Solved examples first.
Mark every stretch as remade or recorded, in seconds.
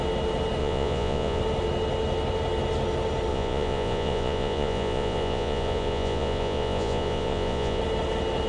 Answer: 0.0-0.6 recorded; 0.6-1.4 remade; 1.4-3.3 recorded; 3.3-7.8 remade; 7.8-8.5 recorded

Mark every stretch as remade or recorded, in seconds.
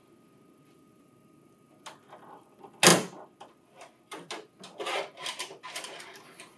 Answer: 0.0-6.6 recorded